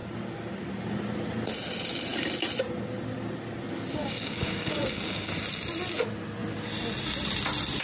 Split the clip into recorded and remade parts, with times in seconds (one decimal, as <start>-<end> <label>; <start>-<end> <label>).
0.0-4.0 recorded; 4.0-5.3 remade; 5.3-7.8 recorded